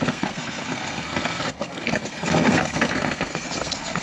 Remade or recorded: remade